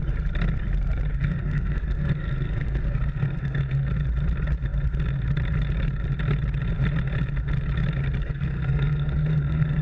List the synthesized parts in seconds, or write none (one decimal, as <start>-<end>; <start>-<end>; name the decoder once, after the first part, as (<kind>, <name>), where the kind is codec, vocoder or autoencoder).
1.1-3.9 (codec, SNAC); 8.2-9.8